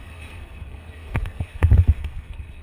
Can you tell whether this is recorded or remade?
remade